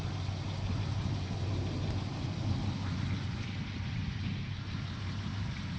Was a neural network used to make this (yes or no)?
no